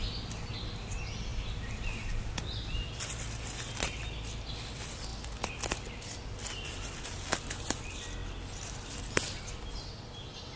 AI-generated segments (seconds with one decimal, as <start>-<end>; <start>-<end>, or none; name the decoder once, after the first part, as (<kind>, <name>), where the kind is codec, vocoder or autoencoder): none